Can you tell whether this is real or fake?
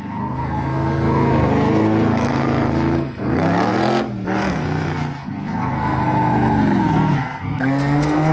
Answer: fake